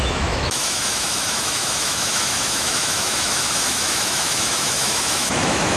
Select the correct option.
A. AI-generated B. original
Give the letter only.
A